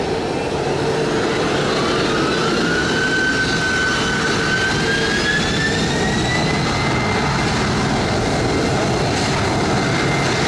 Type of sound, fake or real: real